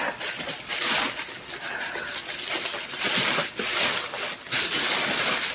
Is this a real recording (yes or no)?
yes